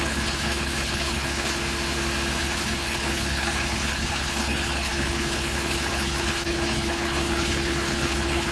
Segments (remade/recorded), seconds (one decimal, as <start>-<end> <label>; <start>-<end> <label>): 0.0-1.6 remade; 1.6-2.4 recorded; 2.4-8.5 remade